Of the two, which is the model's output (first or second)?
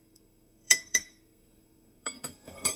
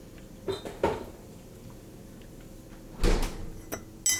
first